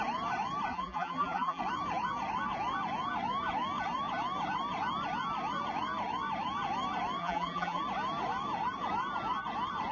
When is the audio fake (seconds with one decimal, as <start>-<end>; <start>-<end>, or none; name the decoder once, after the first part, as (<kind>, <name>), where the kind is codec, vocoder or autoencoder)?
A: 0.7-1.6 (vocoder, BigVGAN v2); 7.2-7.8